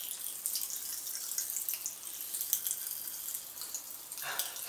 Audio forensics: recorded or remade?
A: recorded